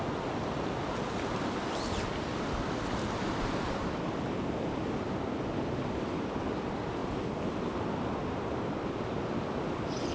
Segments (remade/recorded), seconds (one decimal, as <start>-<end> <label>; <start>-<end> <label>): 0.0-10.1 recorded